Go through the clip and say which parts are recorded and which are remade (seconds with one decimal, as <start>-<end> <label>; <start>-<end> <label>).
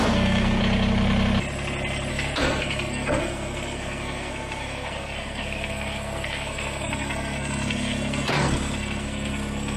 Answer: 0.0-0.6 remade; 0.6-2.1 recorded; 2.1-9.8 remade